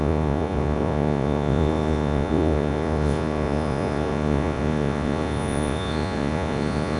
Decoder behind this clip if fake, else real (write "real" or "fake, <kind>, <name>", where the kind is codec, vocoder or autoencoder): fake, vocoder, Vocos